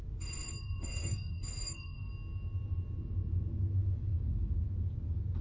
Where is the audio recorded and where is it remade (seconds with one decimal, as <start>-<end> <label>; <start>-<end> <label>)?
0.0-0.6 recorded; 0.6-2.1 remade; 2.1-5.4 recorded